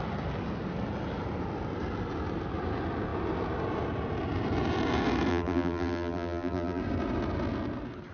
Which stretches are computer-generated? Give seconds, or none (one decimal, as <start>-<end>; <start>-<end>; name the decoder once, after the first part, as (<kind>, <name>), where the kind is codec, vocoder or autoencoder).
5.3-6.8 (vocoder, BigVGAN v2)